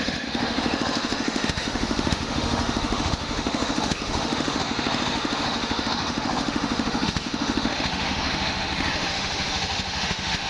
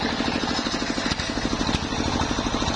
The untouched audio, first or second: second